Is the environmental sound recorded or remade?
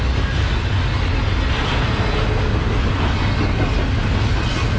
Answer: recorded